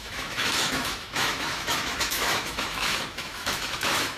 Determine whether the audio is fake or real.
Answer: fake